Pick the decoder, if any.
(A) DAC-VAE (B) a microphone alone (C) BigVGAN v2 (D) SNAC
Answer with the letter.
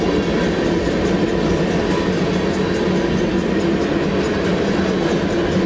B